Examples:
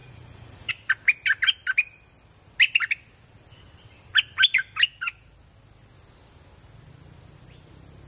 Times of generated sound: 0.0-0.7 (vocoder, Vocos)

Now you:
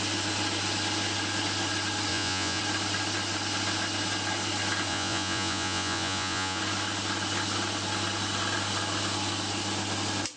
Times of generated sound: 2.1-2.6 (vocoder, Vocos); 4.9-6.6

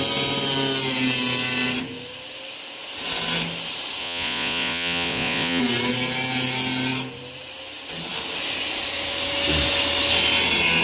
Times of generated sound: 4.0-5.6 (vocoder, Vocos)

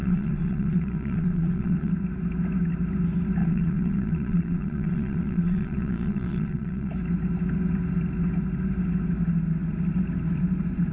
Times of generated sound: 0.0-1.9 (vocoder, Vocos); 3.4-6.9

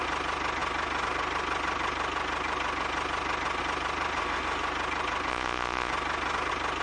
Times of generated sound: 5.3-5.9 (vocoder, Vocos)